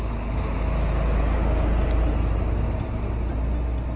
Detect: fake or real real